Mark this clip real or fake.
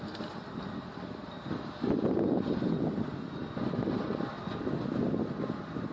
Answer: real